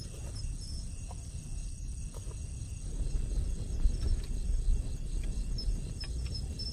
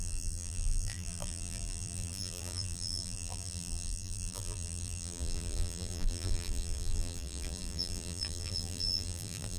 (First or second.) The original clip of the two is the first